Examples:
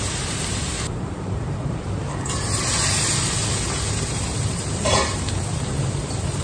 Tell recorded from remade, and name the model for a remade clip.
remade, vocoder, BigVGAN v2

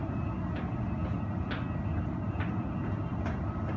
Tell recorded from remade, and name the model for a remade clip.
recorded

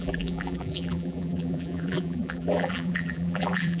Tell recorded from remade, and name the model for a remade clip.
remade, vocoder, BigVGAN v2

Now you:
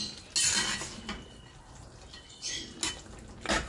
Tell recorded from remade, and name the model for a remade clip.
recorded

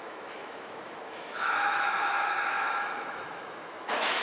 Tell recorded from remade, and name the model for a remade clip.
remade, autoencoder, DAC-VAE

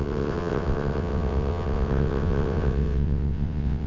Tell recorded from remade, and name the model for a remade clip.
remade, vocoder, WaveNeXt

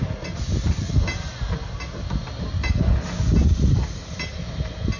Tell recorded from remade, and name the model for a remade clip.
recorded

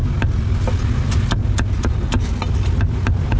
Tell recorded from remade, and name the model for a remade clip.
recorded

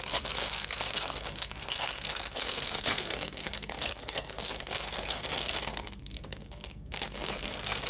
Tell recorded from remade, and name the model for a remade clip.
remade, codec, SNAC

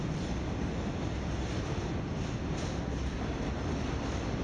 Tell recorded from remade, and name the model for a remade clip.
recorded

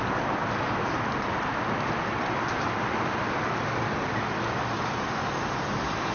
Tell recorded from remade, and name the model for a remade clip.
recorded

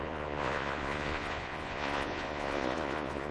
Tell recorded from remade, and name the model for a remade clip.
remade, vocoder, Vocos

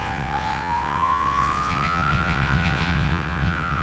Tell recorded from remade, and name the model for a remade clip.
remade, vocoder, WaveNeXt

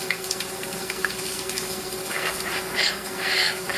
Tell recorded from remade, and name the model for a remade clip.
remade, codec, SNAC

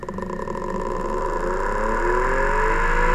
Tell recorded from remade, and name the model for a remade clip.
recorded